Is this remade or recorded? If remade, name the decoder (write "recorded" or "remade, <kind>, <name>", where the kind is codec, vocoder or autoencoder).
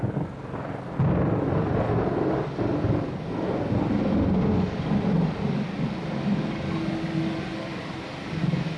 recorded